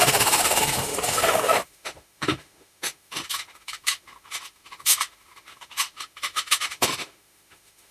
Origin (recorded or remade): remade